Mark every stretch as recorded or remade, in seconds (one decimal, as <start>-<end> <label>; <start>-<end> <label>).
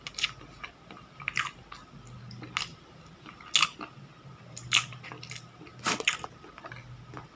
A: 0.0-2.7 recorded; 2.7-3.4 remade; 3.4-7.4 recorded